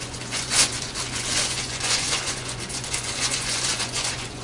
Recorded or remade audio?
remade